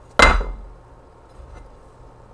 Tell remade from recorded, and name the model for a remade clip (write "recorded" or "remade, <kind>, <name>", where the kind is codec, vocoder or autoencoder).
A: recorded